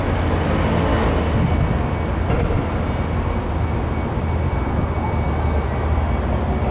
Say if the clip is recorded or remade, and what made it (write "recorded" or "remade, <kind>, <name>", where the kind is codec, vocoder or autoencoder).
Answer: recorded